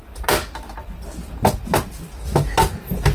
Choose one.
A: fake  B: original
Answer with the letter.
B